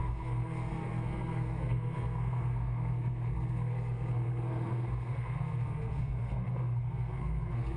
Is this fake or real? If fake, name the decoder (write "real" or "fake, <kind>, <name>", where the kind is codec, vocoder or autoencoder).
fake, codec, SNAC